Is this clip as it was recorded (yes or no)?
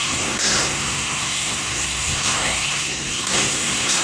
no